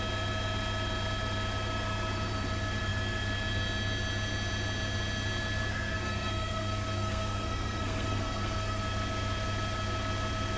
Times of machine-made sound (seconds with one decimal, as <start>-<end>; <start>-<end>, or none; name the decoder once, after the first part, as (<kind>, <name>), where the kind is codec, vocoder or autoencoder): 5.7-8.8 (codec, SNAC)